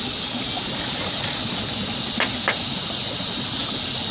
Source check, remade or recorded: recorded